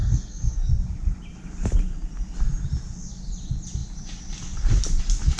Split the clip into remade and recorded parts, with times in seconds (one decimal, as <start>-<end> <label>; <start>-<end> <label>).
0.0-0.7 remade; 0.7-5.4 recorded